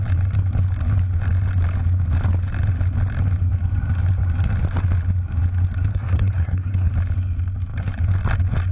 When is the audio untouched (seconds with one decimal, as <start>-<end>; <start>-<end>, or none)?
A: 0.0-5.9; 6.9-8.7